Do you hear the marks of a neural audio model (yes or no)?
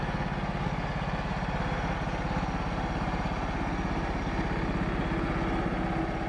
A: no